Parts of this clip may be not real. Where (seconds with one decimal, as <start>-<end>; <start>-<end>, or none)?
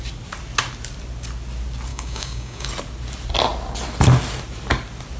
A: 1.9-2.7